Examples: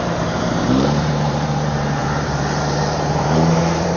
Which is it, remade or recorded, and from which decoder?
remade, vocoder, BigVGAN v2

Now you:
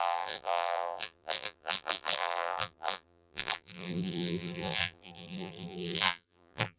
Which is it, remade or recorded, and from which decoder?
remade, vocoder, BigVGAN v2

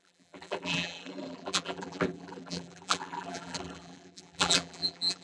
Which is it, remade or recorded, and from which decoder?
remade, vocoder, BigVGAN v2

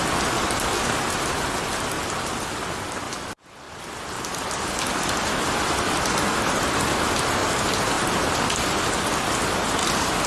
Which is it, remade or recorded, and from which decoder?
recorded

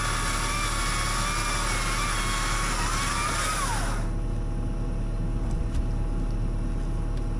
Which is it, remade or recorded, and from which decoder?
recorded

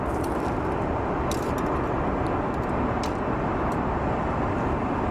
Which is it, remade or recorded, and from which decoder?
recorded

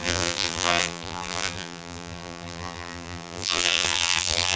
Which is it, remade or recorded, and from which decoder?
remade, vocoder, BigVGAN v2